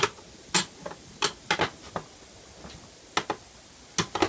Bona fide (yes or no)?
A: yes